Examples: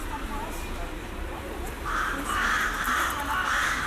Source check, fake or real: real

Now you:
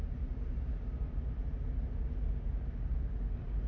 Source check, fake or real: real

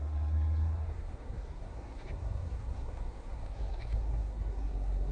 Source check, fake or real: fake